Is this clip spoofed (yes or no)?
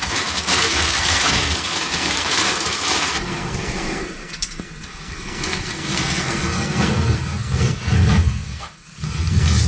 yes